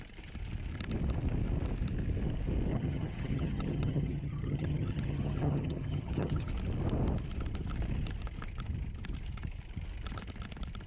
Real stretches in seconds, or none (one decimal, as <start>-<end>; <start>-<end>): 0.0-2.7; 6.5-10.9